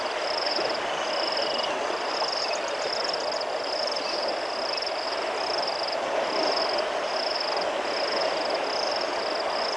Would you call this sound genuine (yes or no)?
yes